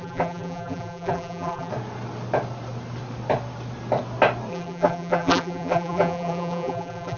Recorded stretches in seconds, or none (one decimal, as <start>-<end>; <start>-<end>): 1.7-4.5